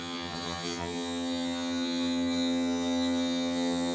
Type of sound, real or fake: fake